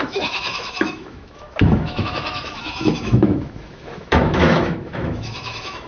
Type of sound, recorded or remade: remade